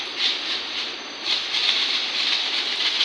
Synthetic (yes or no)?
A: no